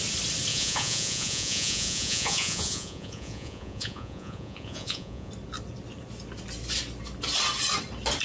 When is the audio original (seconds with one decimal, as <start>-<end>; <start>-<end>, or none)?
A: 0.0-0.5; 5.3-8.2